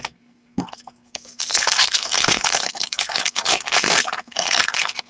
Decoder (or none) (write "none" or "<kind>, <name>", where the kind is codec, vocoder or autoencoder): codec, SNAC